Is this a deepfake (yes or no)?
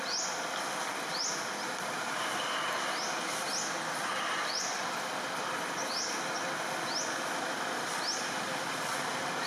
no